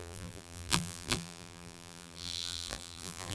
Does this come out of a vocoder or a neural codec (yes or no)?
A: yes